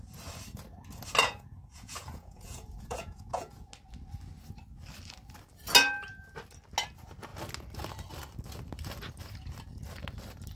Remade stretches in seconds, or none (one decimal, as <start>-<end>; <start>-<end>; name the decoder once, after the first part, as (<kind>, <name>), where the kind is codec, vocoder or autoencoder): 1.2-3.7 (vocoder, Vocos)